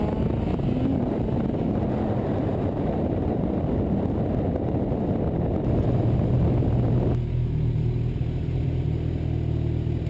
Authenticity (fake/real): real